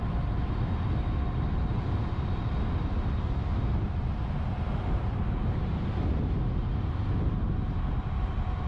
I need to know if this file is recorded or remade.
recorded